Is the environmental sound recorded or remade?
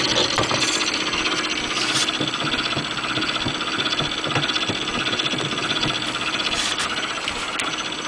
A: recorded